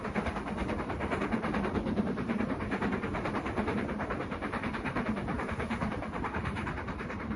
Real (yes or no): no